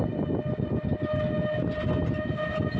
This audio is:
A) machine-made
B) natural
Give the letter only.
B